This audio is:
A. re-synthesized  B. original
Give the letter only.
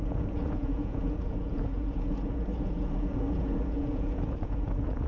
A